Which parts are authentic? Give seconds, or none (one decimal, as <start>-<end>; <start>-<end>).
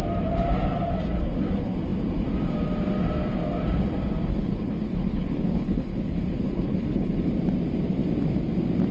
0.0-4.3; 7.3-8.9